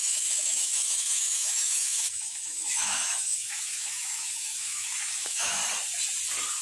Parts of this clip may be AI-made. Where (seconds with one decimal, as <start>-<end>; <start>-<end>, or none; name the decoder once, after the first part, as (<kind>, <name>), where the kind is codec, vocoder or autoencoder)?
0.0-5.6 (autoencoder, DAC-VAE)